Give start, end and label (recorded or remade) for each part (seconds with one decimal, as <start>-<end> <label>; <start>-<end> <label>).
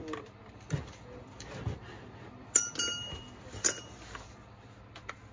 0.0-5.3 recorded